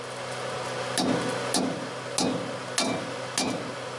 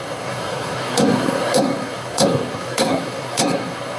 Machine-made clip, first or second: second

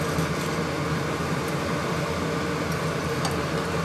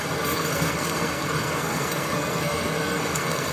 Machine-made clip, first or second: second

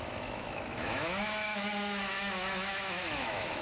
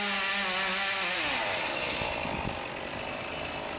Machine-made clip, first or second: first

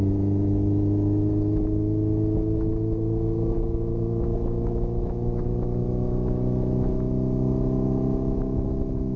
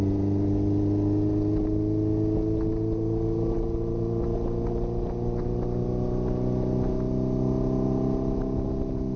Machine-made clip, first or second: first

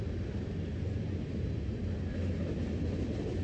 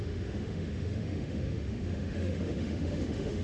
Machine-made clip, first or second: second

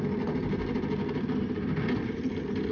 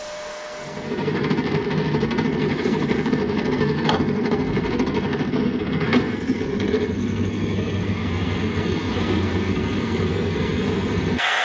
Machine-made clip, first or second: second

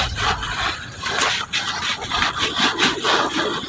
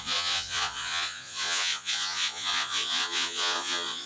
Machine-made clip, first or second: second